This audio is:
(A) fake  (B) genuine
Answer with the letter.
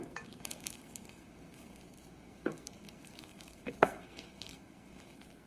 A